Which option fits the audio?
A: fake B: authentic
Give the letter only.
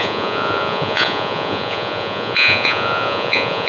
A